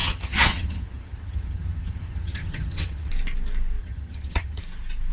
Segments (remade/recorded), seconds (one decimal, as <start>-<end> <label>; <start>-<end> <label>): 0.0-3.1 remade; 3.1-3.8 recorded; 3.8-4.6 remade; 4.6-5.1 recorded